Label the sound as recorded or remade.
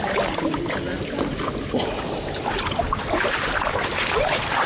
recorded